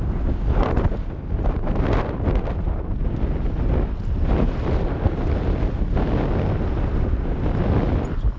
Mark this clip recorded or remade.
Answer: recorded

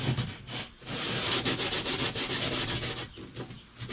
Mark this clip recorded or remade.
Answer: recorded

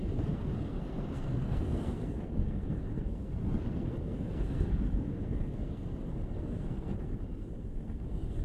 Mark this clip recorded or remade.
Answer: remade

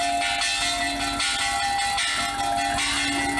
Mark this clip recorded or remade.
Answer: recorded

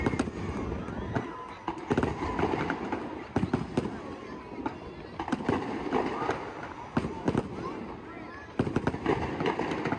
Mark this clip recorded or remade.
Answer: recorded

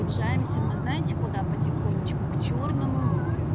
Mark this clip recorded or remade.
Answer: recorded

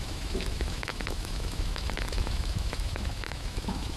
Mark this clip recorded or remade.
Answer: remade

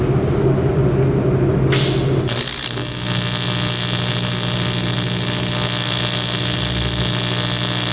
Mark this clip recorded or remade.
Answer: recorded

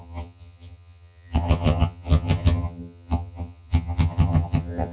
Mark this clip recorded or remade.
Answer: remade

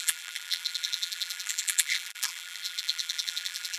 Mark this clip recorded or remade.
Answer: remade